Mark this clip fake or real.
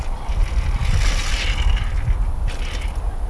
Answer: real